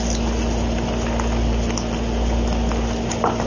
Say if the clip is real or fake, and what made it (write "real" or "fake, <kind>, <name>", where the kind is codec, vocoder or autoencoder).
real